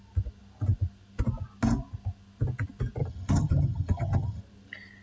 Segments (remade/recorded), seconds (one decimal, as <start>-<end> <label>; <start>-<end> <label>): 0.0-3.0 recorded; 3.0-4.4 remade; 4.4-5.0 recorded